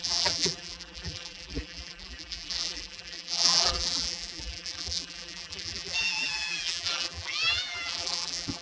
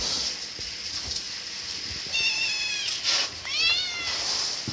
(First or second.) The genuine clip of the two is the second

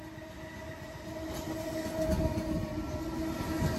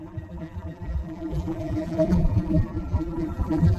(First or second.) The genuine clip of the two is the first